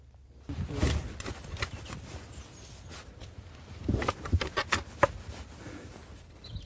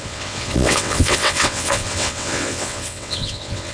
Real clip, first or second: first